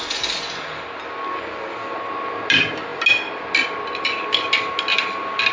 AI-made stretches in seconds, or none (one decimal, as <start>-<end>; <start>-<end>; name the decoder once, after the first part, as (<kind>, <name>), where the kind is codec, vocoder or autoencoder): none